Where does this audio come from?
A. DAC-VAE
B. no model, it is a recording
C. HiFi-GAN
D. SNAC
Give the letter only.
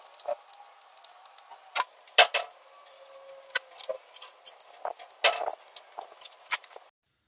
B